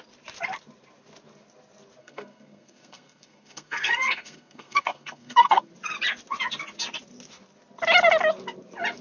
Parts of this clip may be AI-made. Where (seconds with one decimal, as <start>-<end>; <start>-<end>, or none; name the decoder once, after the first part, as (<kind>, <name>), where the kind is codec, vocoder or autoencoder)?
2.0-5.7 (codec, SNAC)

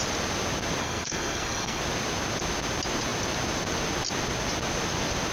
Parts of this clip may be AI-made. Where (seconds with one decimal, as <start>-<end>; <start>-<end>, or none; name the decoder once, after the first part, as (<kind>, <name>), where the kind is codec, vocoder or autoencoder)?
0.8-1.8 (codec, SNAC)

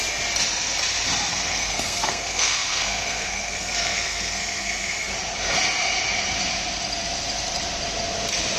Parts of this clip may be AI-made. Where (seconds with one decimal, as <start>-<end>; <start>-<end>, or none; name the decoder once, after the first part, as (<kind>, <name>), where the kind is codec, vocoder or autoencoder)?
1.3-5.1 (codec, SNAC)

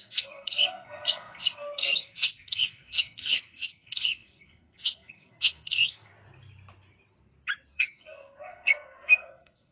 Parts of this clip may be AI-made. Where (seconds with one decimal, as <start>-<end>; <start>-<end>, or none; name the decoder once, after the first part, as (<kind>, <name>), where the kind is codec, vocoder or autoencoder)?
0.0-6.1 (codec, SNAC); 7.7-9.7

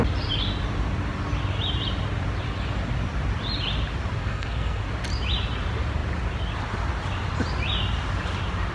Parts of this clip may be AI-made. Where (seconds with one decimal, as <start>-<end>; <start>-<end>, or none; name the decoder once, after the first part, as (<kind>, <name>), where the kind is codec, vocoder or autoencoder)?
4.2-4.8 (codec, SNAC)

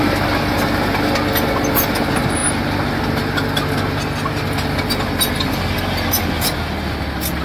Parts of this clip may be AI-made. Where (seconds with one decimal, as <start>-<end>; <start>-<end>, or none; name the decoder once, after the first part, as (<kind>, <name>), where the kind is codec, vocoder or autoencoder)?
none

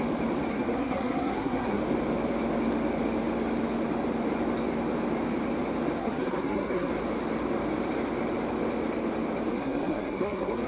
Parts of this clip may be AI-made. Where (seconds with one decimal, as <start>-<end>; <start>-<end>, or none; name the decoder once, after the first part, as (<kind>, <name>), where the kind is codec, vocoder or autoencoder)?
0.5-1.8 (codec, SNAC); 6.0-6.9; 9.5-10.7